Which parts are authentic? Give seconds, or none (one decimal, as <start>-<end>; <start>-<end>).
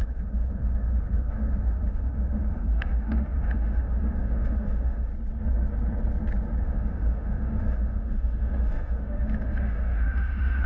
5.1-6.6